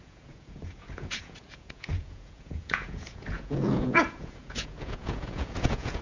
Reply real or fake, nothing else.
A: fake